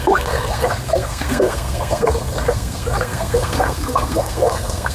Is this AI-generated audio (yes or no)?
yes